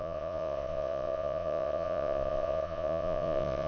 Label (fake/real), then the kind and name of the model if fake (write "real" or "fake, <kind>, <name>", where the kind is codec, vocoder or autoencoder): fake, vocoder, Vocos